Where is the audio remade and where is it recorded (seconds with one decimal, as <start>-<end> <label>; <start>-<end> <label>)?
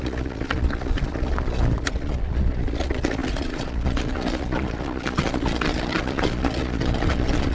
0.0-7.5 remade